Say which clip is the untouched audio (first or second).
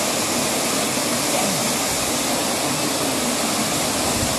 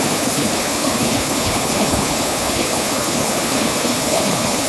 first